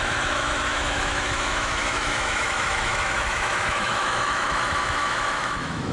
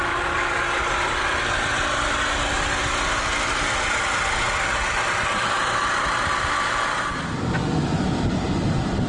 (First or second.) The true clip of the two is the second